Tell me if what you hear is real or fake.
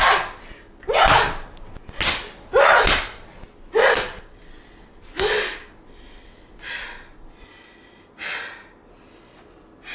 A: real